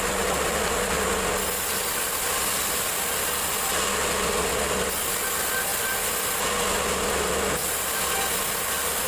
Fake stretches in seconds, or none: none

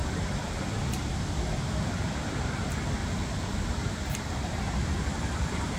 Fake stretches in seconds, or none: 0.0-3.0 (vocoder, BigVGAN v2); 3.9-5.8

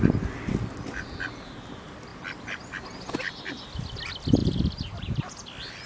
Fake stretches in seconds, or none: 4.4-5.2 (vocoder, BigVGAN v2)

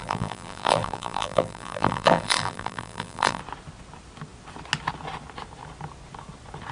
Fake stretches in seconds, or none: 0.0-3.4 (vocoder, BigVGAN v2)

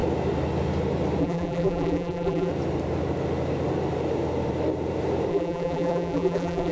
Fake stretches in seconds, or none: 1.2-2.5 (vocoder, BigVGAN v2); 5.3-6.7

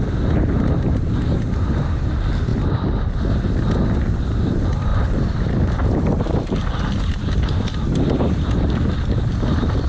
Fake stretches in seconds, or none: 4.9-6.2 (vocoder, BigVGAN v2)

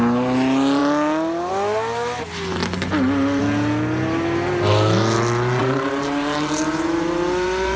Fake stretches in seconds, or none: 5.6-7.8 (vocoder, BigVGAN v2)